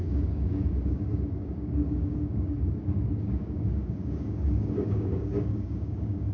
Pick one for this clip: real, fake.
fake